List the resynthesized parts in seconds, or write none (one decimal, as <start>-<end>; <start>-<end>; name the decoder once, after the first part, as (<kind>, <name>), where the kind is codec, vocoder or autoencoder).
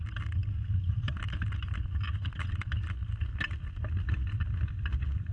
none